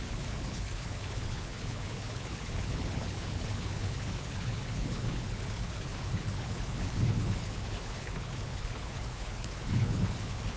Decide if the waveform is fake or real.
fake